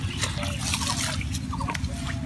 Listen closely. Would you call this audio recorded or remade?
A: recorded